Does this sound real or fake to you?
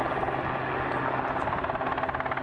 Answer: real